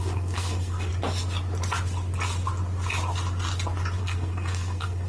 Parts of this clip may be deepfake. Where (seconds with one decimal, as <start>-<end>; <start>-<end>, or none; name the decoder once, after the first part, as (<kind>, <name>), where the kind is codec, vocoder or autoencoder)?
0.0-0.9 (codec, SNAC); 4.0-5.1